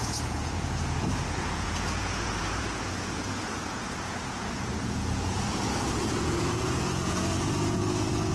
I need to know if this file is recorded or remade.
remade